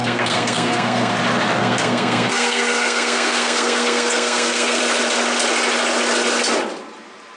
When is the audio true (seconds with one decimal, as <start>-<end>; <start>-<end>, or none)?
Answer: 1.1-1.6; 4.8-7.4